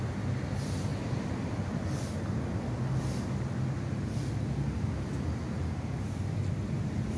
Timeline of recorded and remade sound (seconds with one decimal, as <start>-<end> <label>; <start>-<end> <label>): 0.0-7.2 recorded